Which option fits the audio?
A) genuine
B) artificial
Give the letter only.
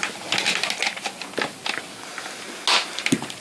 A